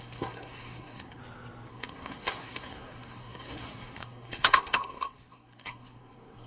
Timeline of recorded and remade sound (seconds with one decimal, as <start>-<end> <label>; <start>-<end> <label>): 0.0-1.2 remade; 1.2-1.7 recorded; 1.7-6.5 remade